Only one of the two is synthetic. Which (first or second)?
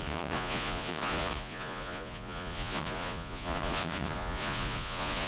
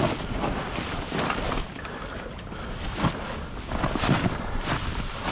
first